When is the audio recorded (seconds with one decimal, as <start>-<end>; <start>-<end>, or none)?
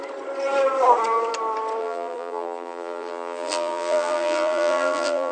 0.0-1.8